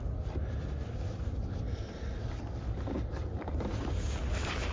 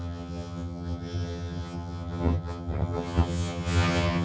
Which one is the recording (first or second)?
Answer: first